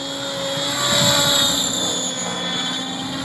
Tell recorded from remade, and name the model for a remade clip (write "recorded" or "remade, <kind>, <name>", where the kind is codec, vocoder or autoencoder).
recorded